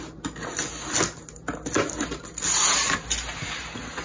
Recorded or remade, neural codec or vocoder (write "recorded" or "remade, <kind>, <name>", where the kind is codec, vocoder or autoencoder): recorded